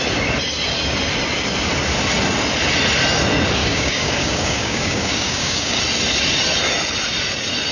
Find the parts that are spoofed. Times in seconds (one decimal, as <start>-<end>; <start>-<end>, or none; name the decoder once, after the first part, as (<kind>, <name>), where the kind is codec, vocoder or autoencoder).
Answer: 3.6-5.8 (codec, DAC)